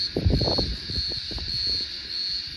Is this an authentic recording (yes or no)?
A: yes